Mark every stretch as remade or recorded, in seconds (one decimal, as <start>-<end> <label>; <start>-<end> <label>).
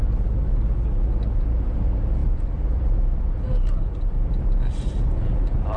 0.0-2.2 recorded; 2.2-5.8 remade